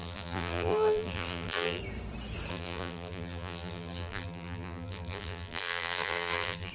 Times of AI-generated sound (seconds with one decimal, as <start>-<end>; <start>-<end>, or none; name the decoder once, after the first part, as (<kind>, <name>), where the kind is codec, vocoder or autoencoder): 0.0-1.8 (vocoder, BigVGAN v2); 2.5-6.7